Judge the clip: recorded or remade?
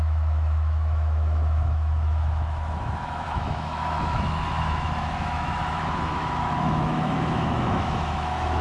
remade